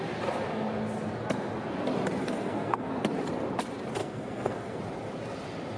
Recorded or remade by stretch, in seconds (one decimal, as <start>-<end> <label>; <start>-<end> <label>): 0.0-2.2 recorded; 2.2-2.9 remade; 2.9-4.0 recorded; 4.0-4.8 remade; 4.8-5.8 recorded